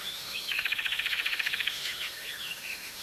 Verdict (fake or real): fake